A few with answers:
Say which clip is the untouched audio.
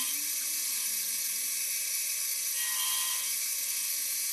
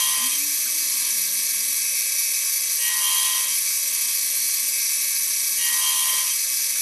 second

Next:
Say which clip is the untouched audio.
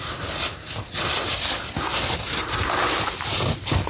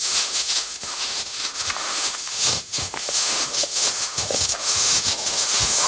first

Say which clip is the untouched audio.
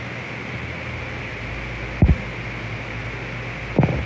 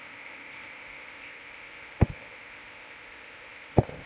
first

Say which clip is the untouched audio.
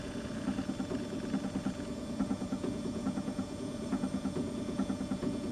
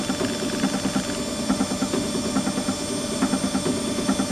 second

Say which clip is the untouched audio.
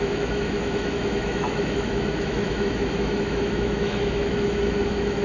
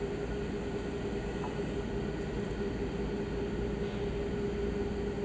second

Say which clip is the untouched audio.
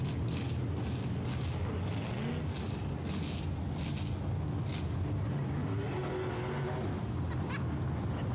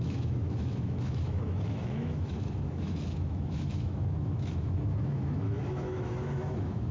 first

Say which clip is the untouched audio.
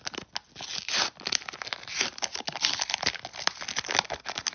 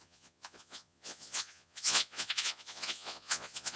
first